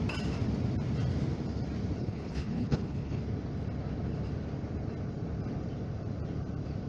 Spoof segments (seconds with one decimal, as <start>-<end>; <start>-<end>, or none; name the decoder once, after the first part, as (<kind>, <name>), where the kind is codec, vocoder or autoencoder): 2.0-3.2 (codec, HILCodec)